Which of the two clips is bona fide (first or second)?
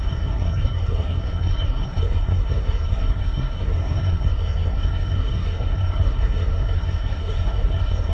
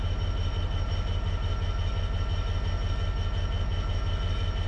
second